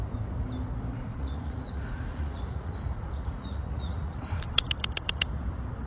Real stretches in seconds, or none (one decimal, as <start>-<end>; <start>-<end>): 0.0-0.9; 4.4-5.9